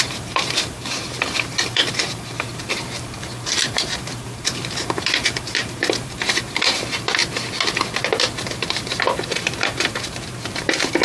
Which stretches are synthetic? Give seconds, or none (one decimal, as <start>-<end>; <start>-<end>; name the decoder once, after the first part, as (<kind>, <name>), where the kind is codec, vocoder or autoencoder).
0.0-7.2 (vocoder, BigVGAN v2); 8.3-11.0